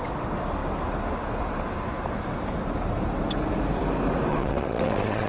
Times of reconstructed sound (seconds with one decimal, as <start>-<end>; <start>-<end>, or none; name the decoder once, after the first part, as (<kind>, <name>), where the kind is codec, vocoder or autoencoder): 4.3-5.3 (vocoder, WaveNeXt)